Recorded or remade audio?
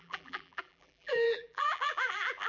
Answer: remade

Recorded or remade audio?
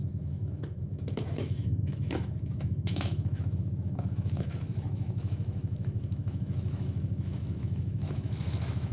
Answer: remade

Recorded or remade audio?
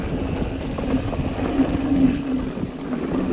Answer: recorded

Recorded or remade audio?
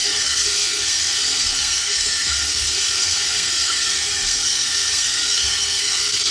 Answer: remade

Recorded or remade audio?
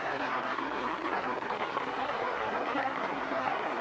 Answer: remade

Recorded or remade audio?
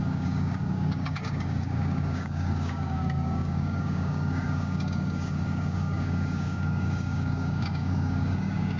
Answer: remade